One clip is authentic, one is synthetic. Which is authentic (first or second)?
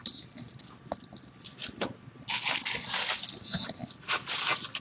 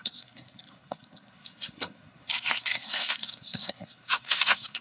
first